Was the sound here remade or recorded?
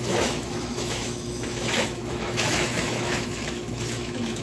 remade